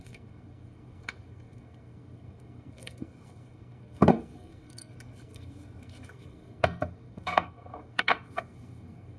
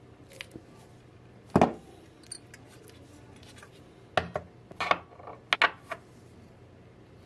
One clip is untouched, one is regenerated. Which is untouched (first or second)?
second